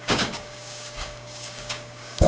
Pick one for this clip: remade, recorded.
remade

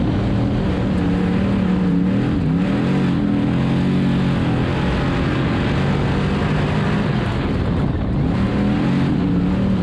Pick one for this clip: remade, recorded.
recorded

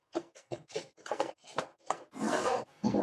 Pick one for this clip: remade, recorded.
remade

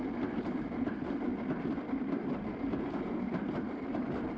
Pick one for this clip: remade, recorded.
recorded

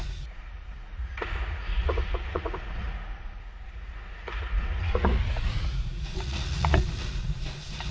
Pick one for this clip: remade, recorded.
remade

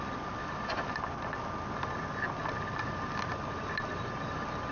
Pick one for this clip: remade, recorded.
recorded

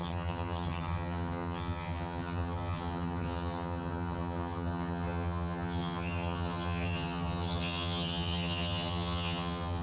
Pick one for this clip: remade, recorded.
remade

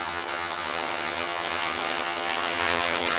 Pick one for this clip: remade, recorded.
remade